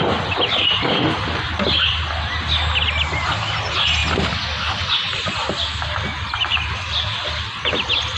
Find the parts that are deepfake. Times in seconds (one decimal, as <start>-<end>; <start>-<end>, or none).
none